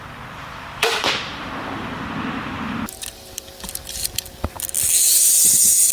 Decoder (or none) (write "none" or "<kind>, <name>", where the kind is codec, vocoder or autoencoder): vocoder, BigVGAN v2